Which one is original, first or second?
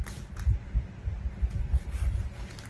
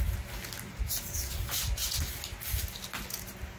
second